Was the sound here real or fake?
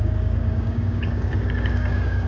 fake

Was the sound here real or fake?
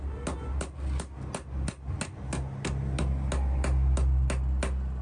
real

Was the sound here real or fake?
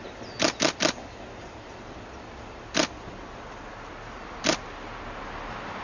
real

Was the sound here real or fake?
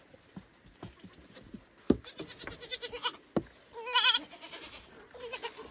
real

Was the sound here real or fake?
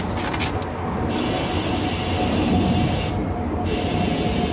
real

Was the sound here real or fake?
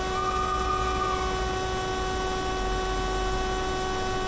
real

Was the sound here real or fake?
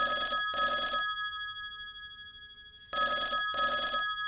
real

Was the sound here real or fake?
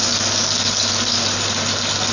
real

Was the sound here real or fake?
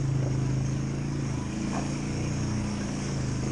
fake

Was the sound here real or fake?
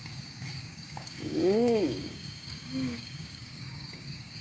fake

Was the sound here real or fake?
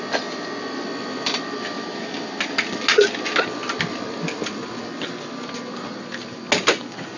real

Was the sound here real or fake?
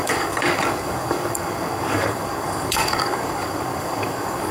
fake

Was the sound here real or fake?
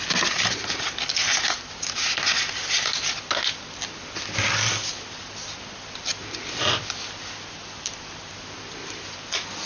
real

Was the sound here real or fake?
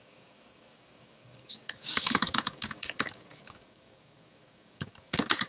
fake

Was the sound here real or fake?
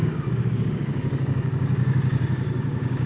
fake